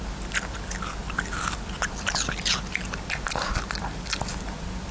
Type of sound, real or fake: real